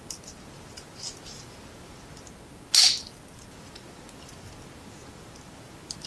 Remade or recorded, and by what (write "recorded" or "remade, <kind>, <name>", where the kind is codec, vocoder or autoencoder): recorded